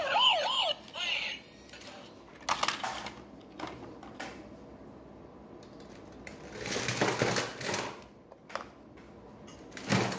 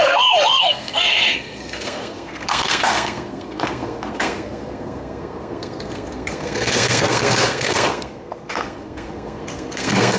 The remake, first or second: second